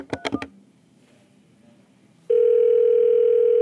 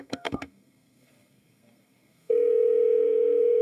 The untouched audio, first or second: first